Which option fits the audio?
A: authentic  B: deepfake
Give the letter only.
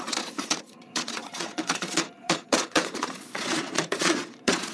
B